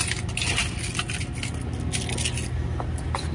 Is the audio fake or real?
real